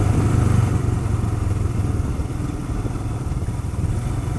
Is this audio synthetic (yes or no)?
yes